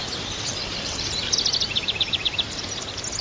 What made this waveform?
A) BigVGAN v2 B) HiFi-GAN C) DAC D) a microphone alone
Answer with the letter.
A